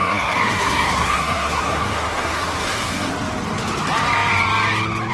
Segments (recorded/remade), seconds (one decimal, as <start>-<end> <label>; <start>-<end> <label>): 0.0-3.1 remade; 3.1-5.1 recorded